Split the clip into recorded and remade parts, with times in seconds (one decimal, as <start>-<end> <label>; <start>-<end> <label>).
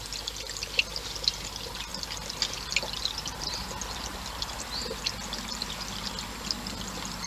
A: 0.0-7.3 recorded